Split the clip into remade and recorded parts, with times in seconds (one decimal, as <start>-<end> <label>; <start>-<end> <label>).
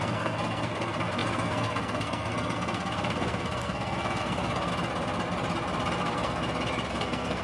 0.0-4.7 remade; 4.7-6.0 recorded; 6.0-6.4 remade; 6.4-6.9 recorded; 6.9-7.4 remade